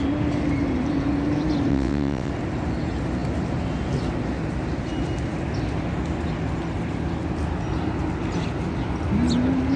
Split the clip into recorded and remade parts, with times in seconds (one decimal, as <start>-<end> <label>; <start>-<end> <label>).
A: 0.0-1.7 recorded; 1.7-2.3 remade; 2.3-9.8 recorded